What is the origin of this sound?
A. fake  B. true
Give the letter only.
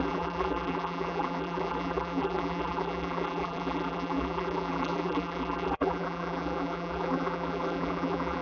A